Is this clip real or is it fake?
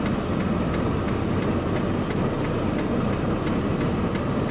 real